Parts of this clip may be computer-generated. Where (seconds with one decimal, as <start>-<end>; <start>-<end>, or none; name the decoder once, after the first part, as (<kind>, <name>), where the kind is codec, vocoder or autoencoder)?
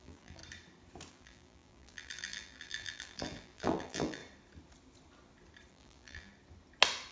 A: 0.0-0.4 (vocoder, BigVGAN v2); 1.1-4.2; 5.7-6.3